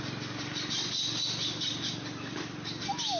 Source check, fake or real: real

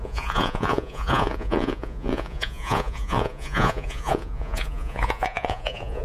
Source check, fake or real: fake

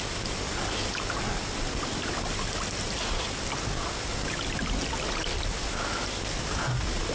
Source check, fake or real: real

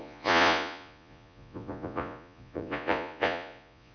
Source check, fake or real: fake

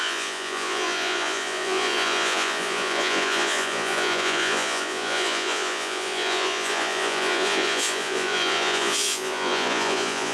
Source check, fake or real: fake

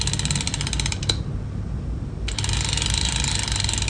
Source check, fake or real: real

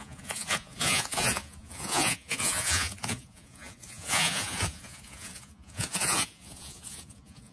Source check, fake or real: fake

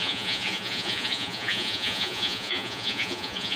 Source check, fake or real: fake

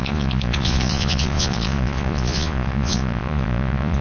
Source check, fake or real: fake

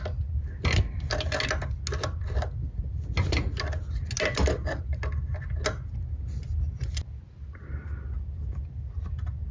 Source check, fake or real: real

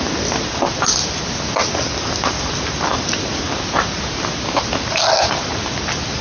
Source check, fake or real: real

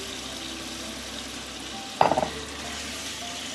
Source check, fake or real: real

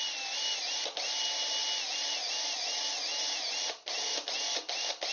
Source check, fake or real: real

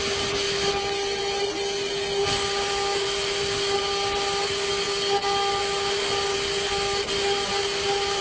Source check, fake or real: real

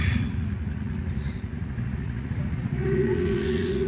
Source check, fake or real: fake